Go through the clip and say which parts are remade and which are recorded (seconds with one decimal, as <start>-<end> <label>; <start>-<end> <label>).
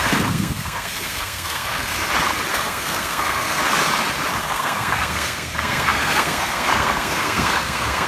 0.0-1.9 remade; 1.9-2.5 recorded; 2.5-3.6 remade; 3.6-4.4 recorded; 4.4-8.1 remade